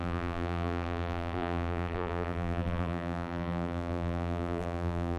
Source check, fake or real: fake